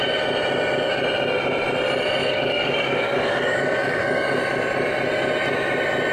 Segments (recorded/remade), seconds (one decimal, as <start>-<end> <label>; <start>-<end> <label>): 0.0-2.2 recorded; 2.2-4.4 remade; 4.4-6.1 recorded

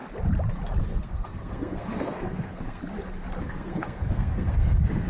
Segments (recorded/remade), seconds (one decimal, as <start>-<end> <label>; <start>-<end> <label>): 0.0-0.8 recorded; 0.8-2.8 remade; 2.8-3.4 recorded; 3.4-5.1 remade